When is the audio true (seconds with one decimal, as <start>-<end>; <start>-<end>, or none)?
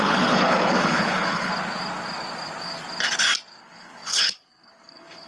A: 1.5-3.6